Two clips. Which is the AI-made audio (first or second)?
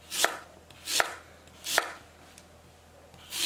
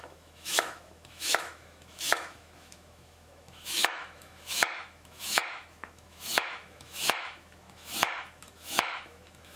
second